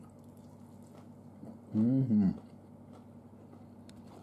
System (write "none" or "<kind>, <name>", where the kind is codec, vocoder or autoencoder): none